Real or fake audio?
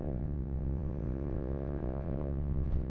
fake